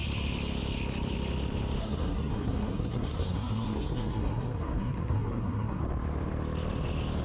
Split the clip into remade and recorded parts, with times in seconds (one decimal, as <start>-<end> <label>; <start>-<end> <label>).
0.0-1.8 recorded; 1.8-5.8 remade; 5.8-7.2 recorded